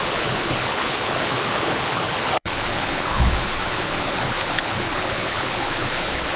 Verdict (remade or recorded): remade